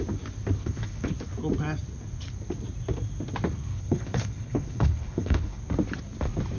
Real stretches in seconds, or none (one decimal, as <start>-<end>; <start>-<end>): 0.0-0.6; 1.1-3.7; 5.6-6.6